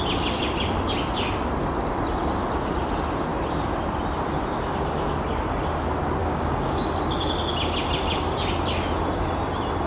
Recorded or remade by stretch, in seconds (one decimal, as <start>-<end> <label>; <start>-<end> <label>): 0.0-6.2 recorded; 6.2-6.9 remade; 6.9-9.9 recorded

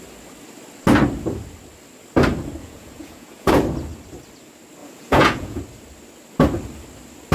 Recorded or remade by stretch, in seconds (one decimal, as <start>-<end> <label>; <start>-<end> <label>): 0.0-2.6 recorded; 2.6-3.5 remade; 3.5-4.8 recorded; 4.8-5.6 remade; 5.6-7.3 recorded

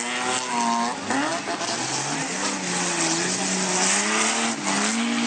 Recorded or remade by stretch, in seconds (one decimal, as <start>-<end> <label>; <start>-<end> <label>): 0.0-5.3 recorded

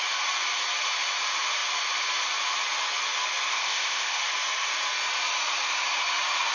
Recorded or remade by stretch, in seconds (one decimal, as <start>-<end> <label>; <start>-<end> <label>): 0.0-3.5 recorded; 3.5-4.2 remade; 4.2-6.5 recorded

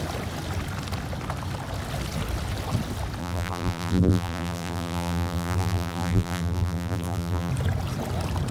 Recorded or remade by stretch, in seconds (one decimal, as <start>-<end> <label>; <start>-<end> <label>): 0.0-3.2 recorded; 3.2-7.5 remade; 7.5-8.5 recorded

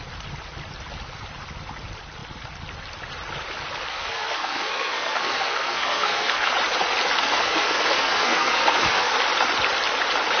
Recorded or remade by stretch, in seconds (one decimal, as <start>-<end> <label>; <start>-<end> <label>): 0.0-3.9 recorded; 3.9-6.5 remade; 6.5-7.2 recorded; 7.2-9.1 remade; 9.1-10.4 recorded

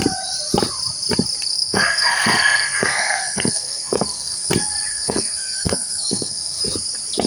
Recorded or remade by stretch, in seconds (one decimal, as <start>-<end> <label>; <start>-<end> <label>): 0.0-1.5 recorded; 1.5-4.5 remade; 4.5-4.9 recorded; 4.9-6.6 remade; 6.6-7.3 recorded

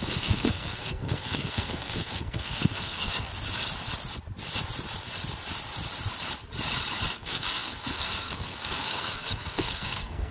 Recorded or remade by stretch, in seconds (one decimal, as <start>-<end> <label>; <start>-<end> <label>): 0.0-3.3 remade; 3.3-7.1 recorded; 7.1-10.3 remade